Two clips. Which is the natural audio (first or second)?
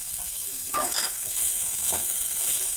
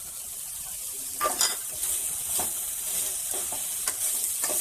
second